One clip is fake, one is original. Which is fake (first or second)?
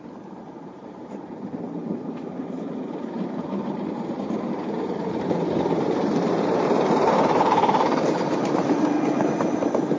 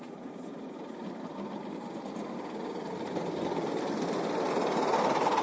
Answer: first